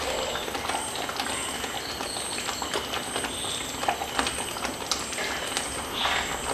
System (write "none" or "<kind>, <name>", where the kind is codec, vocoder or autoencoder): none